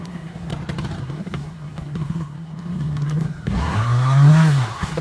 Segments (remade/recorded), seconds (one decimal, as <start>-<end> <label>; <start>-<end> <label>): 0.0-0.5 remade; 0.5-1.0 recorded; 1.0-5.0 remade